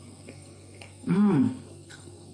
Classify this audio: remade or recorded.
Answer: remade